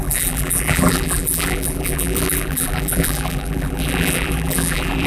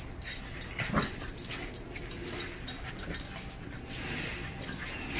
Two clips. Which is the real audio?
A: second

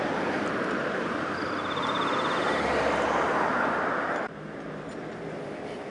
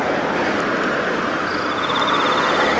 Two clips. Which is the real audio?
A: second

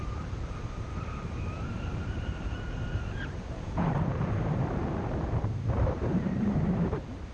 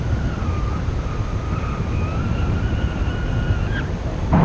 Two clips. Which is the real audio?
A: second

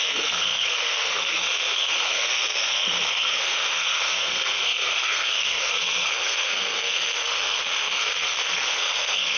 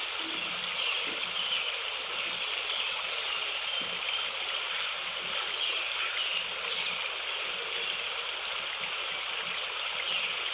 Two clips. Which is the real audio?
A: second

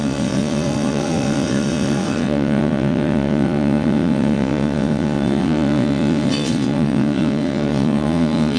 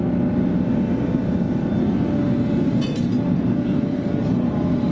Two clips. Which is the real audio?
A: second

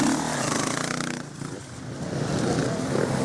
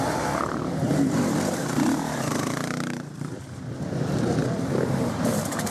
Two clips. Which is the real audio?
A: first